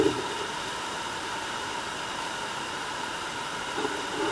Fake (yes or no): yes